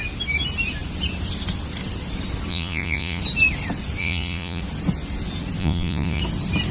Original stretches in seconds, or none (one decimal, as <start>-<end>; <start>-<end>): 0.0-2.5; 3.2-4.0; 4.6-5.6; 6.2-6.7